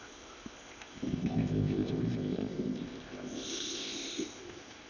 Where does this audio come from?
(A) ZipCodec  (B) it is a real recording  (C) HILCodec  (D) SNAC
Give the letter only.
A